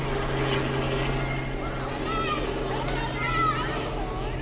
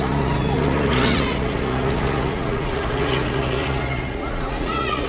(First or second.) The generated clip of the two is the second